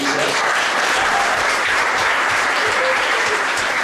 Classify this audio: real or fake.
fake